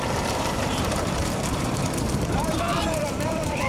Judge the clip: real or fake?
fake